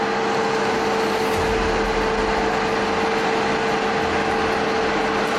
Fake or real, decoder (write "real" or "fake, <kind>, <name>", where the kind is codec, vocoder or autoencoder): real